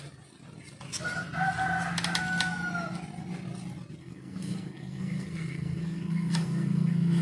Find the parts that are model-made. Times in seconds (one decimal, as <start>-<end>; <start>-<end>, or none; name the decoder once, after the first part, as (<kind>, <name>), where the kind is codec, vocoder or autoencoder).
4.0-7.2 (codec, SNAC)